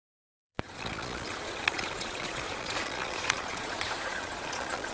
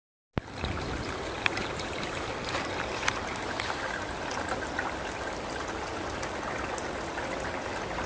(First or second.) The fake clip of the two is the first